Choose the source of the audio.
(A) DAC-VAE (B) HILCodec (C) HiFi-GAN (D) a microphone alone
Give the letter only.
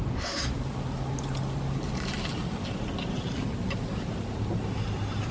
D